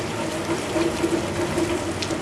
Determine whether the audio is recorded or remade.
recorded